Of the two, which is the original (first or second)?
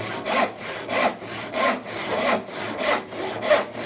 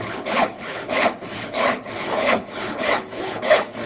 first